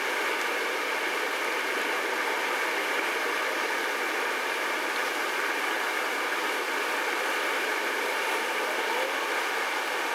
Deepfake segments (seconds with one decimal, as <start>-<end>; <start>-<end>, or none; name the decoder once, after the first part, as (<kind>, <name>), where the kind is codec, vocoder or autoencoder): 5.0-9.3 (vocoder, BigVGAN v2)